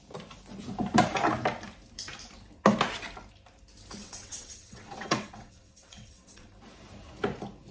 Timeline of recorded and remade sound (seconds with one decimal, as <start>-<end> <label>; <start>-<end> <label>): 0.0-4.0 recorded; 4.0-6.5 remade; 6.5-7.7 recorded